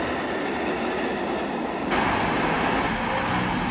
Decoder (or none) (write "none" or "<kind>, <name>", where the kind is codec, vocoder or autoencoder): none